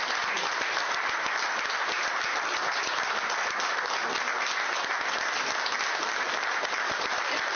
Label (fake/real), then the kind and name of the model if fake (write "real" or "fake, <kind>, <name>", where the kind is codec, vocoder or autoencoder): real